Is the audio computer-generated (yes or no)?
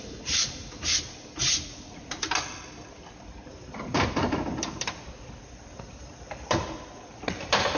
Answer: no